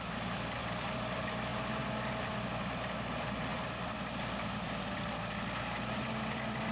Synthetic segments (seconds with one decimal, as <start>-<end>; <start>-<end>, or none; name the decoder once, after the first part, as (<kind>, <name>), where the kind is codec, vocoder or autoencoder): 0.0-1.5 (vocoder, BigVGAN v2); 2.1-6.7